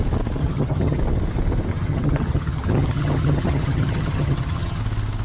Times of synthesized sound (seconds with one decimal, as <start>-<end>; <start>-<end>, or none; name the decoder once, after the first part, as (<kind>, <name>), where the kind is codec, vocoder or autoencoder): 0.4-1.0 (vocoder, HiFi-GAN); 1.7-4.8